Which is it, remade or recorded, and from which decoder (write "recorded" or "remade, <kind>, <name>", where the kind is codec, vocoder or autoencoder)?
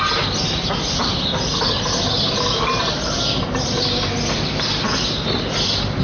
recorded